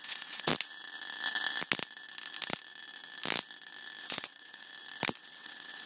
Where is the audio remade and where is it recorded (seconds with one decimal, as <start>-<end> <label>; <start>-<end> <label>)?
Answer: 0.0-0.5 remade; 0.5-4.0 recorded; 4.0-4.7 remade; 4.7-5.2 recorded; 5.2-5.9 remade